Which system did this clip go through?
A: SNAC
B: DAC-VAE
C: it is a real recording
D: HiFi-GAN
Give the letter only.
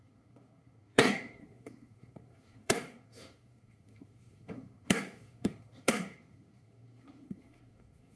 A